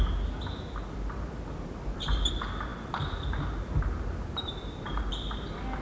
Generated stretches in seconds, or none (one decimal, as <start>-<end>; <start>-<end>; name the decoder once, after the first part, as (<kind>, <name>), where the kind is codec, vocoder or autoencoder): none